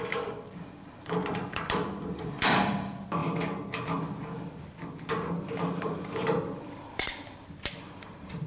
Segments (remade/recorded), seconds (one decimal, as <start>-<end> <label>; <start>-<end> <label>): 0.0-3.2 remade; 3.2-5.8 recorded; 5.8-8.5 remade